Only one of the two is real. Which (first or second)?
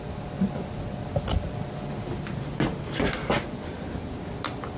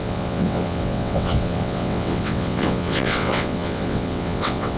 first